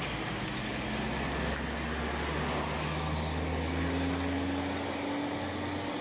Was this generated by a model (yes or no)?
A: no